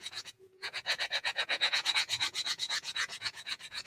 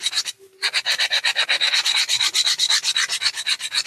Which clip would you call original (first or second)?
second